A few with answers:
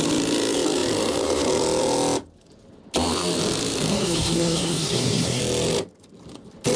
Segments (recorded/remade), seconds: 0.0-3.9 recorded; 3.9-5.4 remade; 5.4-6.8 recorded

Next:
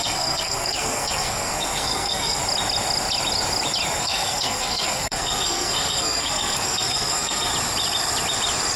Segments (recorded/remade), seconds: 0.0-2.4 remade; 2.4-4.0 recorded; 4.0-7.5 remade; 7.5-8.8 recorded

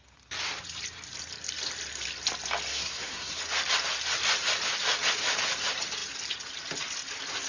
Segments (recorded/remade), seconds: 0.0-2.7 recorded; 2.7-3.4 remade; 3.4-7.5 recorded